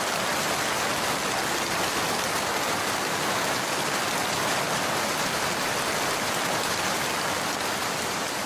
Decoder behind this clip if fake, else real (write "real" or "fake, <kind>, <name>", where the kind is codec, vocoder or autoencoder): real